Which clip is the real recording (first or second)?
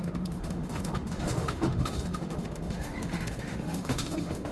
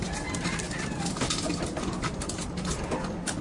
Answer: second